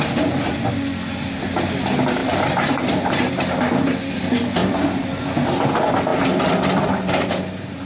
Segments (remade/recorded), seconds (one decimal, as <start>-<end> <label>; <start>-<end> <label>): 0.0-7.9 recorded

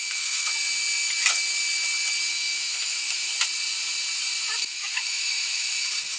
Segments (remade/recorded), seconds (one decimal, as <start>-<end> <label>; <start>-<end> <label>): 0.0-0.5 remade; 0.5-2.3 recorded; 2.3-3.3 remade; 3.3-4.6 recorded; 4.6-6.2 remade